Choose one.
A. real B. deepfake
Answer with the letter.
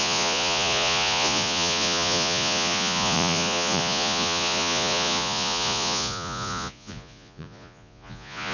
B